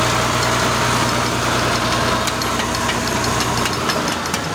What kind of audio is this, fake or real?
real